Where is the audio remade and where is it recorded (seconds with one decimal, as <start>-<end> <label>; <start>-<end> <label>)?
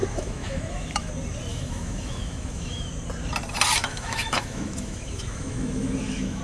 0.0-1.1 remade; 1.1-1.5 recorded; 1.5-2.9 remade; 2.9-3.8 recorded; 3.8-6.4 remade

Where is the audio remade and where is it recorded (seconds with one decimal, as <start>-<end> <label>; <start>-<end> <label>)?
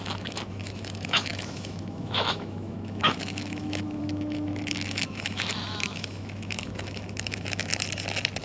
0.0-7.7 remade; 7.7-8.4 recorded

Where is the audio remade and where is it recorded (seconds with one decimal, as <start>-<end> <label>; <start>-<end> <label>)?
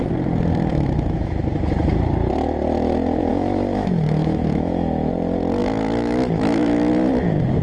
0.0-0.7 recorded; 0.7-1.3 remade; 1.3-3.3 recorded; 3.3-5.1 remade; 5.1-5.6 recorded; 5.6-6.9 remade; 6.9-7.6 recorded